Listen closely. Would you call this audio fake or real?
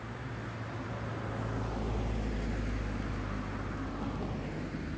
real